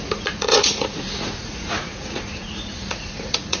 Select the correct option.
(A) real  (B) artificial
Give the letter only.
B